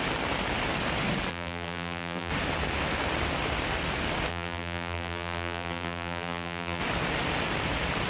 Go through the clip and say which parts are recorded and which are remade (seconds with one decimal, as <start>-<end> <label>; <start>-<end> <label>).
0.0-1.3 recorded; 1.3-2.3 remade; 2.3-4.3 recorded; 4.3-6.8 remade; 6.8-8.1 recorded